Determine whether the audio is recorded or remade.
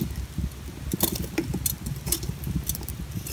recorded